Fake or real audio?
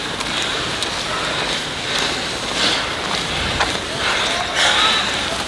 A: real